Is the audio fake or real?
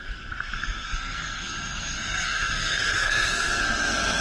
fake